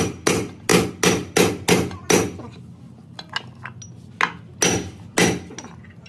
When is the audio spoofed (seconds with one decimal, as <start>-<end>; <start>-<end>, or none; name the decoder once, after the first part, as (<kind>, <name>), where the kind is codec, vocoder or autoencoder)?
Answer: none